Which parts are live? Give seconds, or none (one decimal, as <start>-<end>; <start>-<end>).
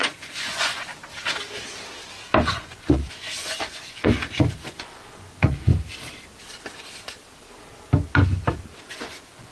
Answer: 0.9-2.4; 5.7-8.8